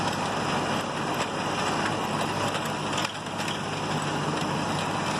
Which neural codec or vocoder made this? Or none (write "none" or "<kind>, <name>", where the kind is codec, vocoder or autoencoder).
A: none